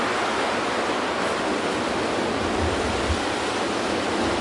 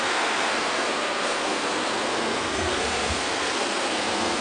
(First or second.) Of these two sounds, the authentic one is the first